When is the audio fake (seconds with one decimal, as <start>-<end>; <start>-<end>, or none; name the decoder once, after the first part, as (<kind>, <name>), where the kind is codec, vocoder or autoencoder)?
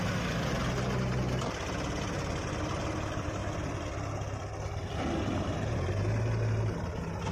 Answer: 3.0-3.4 (vocoder, BigVGAN v2)